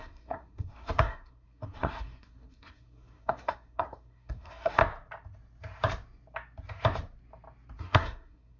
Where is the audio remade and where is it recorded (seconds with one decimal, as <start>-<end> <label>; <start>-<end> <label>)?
0.0-4.8 remade; 4.8-7.8 recorded; 7.8-8.6 remade